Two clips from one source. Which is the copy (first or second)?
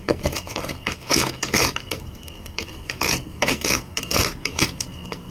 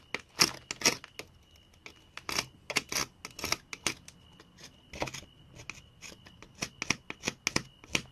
first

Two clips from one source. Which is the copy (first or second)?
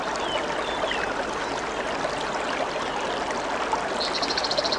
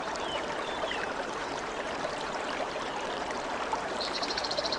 second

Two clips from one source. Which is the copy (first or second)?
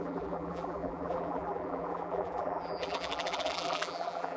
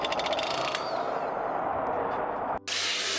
first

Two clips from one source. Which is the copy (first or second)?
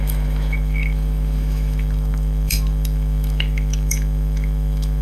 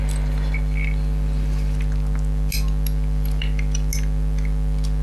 first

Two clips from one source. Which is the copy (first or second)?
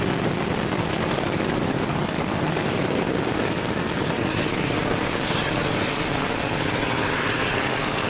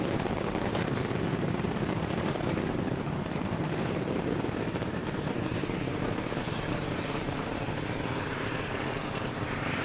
second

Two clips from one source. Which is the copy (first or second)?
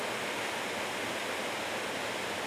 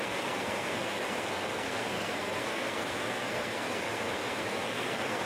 second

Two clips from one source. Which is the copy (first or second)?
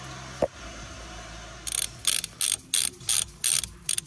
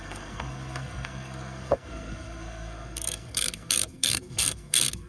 second